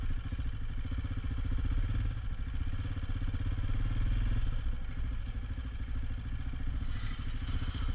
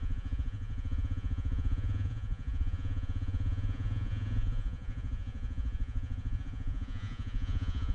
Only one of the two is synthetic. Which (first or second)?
second